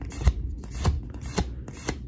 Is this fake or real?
real